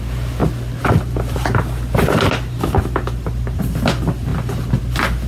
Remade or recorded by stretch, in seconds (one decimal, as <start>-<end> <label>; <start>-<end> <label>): 0.0-5.3 recorded